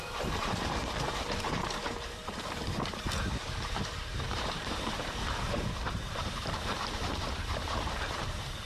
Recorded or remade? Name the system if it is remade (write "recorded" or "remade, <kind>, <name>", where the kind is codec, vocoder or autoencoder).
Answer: remade, vocoder, BigVGAN v2